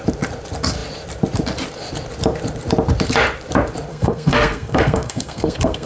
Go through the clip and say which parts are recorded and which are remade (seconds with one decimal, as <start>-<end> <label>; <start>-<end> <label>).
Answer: 0.0-3.9 recorded; 3.9-5.9 remade